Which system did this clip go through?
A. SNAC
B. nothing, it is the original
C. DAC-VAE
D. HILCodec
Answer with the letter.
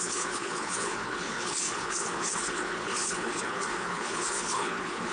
D